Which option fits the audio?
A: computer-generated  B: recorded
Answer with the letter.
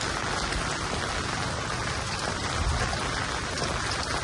B